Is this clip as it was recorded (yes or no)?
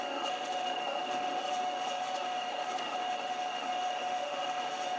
no